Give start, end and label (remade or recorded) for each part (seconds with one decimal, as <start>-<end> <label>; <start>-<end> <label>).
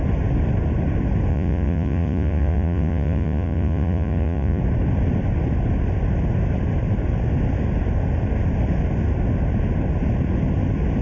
0.0-1.3 recorded; 1.3-4.6 remade; 4.6-11.0 recorded